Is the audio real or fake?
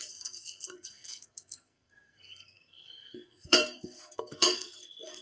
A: fake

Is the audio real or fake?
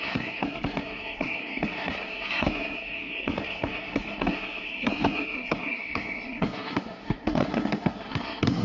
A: fake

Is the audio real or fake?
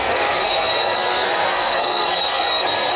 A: fake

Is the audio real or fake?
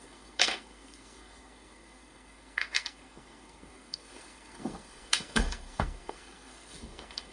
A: fake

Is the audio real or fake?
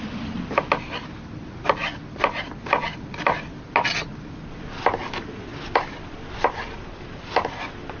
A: real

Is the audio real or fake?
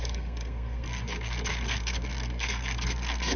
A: fake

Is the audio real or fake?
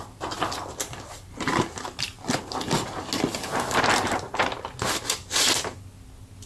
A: real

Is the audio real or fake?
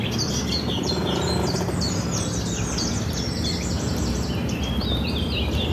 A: real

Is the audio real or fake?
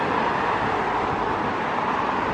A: real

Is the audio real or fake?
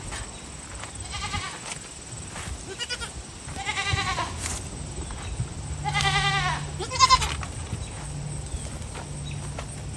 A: real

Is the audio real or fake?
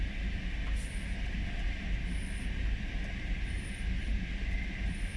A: real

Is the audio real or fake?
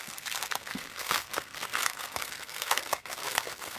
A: fake